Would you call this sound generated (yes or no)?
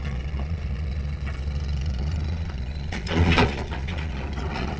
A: yes